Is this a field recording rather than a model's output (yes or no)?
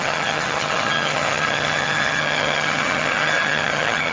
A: no